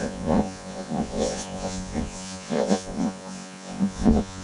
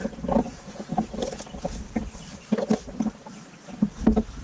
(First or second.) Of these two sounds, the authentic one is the second